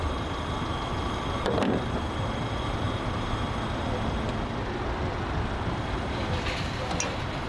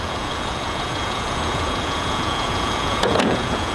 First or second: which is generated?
second